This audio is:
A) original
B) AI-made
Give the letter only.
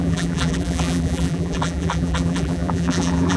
B